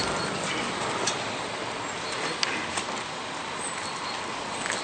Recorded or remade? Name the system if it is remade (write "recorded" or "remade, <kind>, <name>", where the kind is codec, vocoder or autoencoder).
recorded